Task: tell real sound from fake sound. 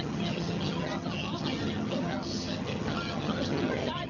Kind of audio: fake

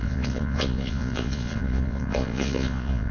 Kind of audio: fake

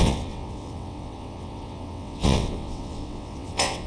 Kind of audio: fake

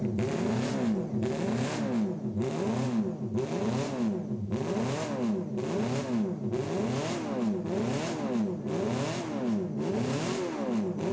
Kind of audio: real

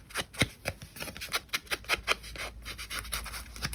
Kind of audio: real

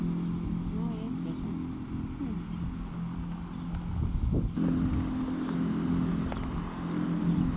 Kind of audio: real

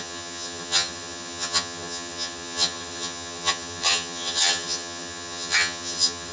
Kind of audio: fake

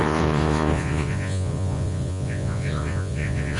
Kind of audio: fake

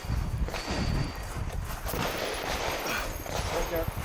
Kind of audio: real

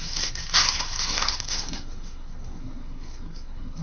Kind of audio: fake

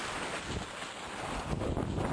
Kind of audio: real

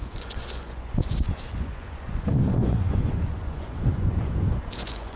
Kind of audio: fake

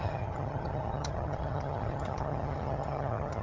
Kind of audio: fake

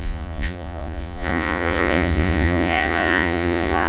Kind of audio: fake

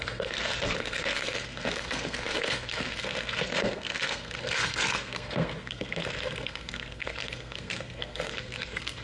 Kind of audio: fake